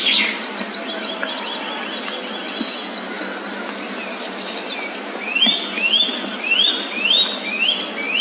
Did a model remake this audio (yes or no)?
no